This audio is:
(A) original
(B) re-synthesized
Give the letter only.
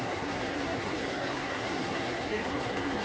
B